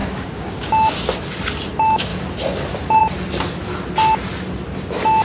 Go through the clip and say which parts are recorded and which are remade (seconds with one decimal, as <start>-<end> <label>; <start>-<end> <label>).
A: 0.0-0.7 remade; 0.7-5.2 recorded